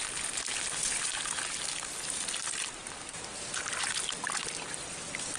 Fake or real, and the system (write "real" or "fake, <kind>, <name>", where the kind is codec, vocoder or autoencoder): real